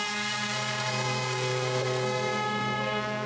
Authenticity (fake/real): fake